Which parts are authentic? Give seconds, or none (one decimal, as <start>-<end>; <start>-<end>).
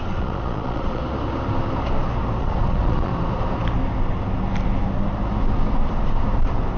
1.0-2.4; 3.1-6.8